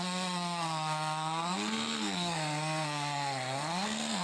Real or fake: fake